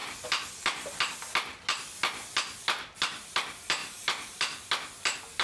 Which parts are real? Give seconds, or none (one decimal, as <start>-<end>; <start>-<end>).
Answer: 0.0-3.8; 4.7-5.4